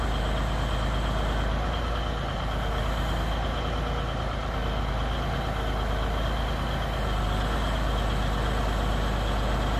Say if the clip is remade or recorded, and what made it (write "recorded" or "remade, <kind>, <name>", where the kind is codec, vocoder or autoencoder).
recorded